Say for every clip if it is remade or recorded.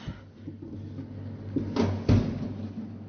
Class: recorded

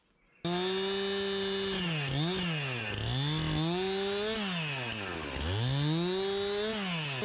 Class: recorded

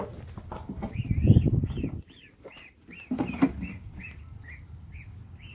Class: recorded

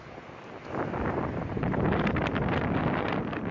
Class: recorded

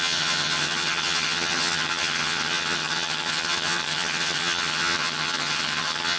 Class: remade